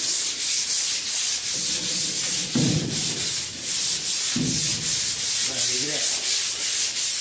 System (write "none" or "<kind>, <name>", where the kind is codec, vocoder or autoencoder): none